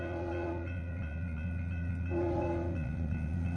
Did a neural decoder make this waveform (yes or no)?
yes